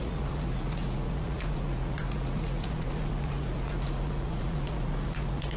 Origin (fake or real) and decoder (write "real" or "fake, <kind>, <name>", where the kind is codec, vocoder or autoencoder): fake, vocoder, Vocos